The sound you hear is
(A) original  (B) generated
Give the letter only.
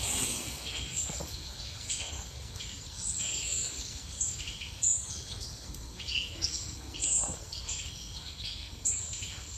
B